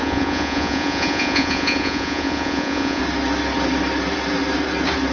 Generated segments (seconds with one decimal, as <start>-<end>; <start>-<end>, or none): 0.0-3.0